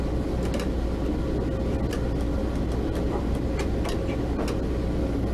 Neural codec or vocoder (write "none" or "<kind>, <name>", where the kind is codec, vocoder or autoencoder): none